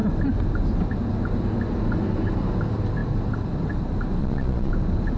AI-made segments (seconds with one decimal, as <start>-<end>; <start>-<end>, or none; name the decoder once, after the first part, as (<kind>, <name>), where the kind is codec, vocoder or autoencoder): 4.2-4.7 (vocoder, Vocos)